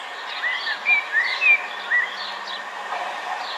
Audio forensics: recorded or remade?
recorded